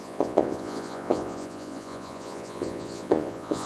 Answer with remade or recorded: remade